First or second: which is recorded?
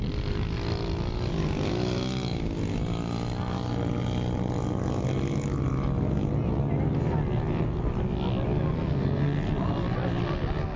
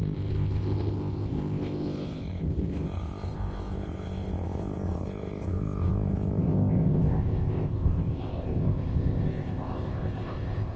first